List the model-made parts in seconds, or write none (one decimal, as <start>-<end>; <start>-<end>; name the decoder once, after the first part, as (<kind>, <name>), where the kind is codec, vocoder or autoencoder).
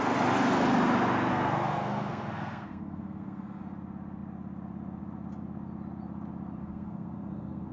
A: 1.3-3.6 (codec, SNAC); 6.6-7.7